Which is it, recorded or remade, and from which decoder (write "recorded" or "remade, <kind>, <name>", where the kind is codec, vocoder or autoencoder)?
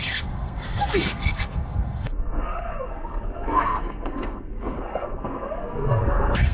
remade, codec, SNAC